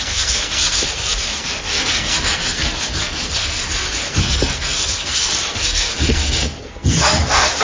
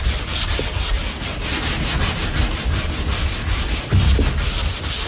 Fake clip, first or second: first